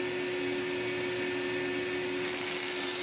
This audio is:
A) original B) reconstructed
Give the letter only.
A